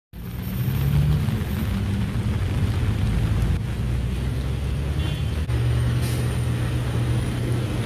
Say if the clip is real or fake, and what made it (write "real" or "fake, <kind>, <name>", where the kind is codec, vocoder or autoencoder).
real